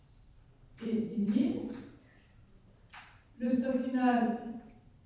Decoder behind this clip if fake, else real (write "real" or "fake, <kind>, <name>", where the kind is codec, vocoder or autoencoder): fake, vocoder, BigVGAN v2